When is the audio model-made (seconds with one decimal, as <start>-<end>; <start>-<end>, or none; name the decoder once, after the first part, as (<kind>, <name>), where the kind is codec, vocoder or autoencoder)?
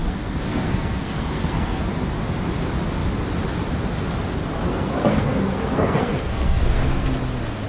0.0-1.9 (codec, SNAC); 4.7-7.1